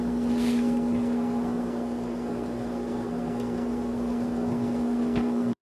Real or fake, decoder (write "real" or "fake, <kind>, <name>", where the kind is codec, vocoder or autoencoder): fake, codec, SNAC